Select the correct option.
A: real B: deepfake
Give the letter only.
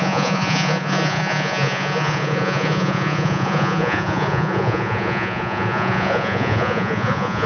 B